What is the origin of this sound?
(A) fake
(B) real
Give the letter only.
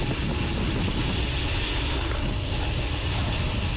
B